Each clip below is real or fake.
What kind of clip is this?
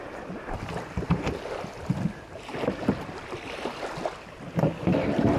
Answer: real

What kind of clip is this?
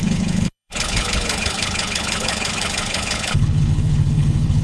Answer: fake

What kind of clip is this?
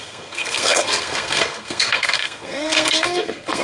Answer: fake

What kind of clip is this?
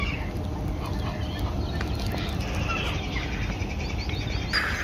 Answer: real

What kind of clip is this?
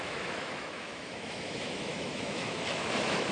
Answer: fake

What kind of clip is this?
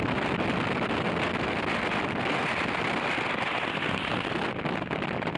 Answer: real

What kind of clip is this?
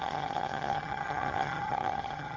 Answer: fake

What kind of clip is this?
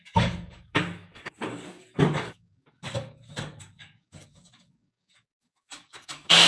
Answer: fake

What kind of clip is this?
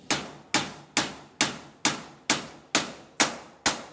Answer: real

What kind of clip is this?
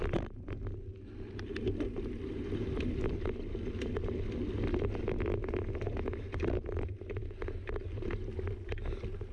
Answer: real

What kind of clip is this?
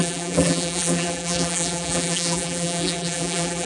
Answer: fake